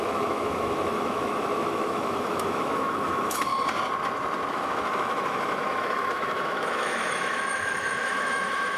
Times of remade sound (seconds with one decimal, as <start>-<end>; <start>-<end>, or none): 0.0-3.5; 4.5-8.8